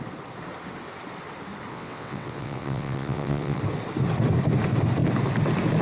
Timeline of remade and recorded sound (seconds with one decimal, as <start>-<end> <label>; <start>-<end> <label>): 0.0-1.7 recorded; 1.7-3.6 remade; 3.6-5.8 recorded